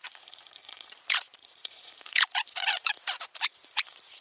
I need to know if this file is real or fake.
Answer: fake